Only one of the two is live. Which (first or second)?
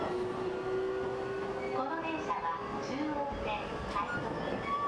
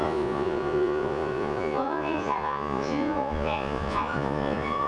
first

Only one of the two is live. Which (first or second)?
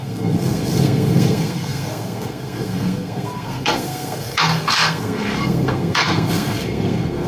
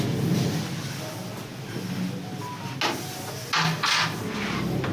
second